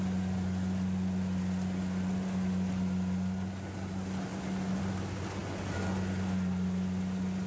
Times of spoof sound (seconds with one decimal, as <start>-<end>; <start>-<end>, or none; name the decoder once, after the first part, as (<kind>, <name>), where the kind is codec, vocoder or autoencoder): none